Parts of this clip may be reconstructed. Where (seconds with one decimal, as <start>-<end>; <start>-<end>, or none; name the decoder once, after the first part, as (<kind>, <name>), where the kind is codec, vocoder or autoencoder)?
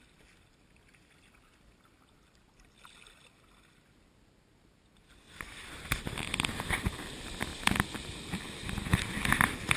none